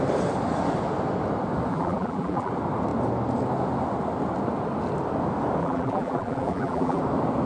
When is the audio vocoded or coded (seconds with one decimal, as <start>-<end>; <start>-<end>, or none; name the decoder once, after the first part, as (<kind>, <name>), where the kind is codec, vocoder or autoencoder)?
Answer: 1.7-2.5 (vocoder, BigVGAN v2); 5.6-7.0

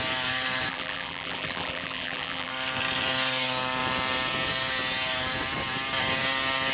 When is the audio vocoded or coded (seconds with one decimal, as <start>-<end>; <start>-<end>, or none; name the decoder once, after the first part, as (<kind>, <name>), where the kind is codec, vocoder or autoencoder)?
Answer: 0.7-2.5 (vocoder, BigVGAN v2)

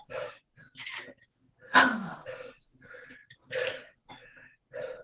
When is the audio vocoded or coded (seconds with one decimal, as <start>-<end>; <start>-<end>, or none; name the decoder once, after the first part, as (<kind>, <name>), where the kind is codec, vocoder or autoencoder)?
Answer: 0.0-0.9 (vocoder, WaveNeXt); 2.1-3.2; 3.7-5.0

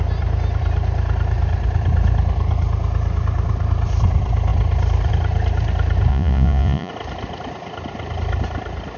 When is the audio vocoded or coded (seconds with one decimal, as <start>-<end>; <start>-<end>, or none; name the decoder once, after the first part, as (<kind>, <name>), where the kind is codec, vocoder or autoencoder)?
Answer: 6.1-6.9 (vocoder, Vocos)

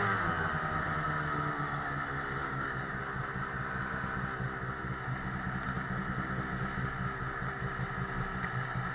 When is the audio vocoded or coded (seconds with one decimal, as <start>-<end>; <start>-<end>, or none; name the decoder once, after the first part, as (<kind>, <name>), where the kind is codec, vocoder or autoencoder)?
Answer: 2.4-3.0 (codec, DAC)

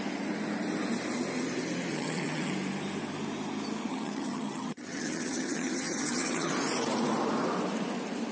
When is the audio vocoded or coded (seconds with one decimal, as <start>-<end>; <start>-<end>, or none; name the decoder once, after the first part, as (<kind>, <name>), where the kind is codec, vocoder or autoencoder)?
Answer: 1.9-2.5 (vocoder, HiFi-GAN); 3.9-6.5

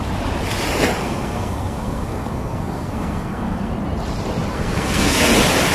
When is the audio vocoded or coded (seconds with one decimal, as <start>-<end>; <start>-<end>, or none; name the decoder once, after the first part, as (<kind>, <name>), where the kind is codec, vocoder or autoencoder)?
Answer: 1.0-3.7 (codec, SNAC); 4.5-5.3